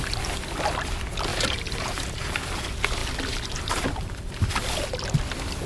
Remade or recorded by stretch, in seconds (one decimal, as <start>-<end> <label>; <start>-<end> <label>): 0.0-1.3 recorded; 1.3-2.4 remade; 2.4-3.0 recorded; 3.0-4.5 remade; 4.5-5.7 recorded